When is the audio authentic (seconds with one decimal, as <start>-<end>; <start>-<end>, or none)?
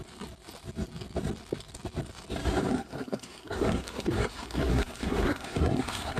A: 0.0-2.7